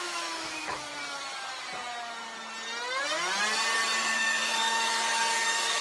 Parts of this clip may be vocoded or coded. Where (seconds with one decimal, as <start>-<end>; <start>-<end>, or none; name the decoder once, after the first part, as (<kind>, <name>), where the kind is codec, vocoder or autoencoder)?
0.0-0.9 (autoencoder, DAC-VAE); 4.0-5.8